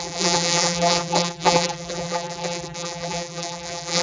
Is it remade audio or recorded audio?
remade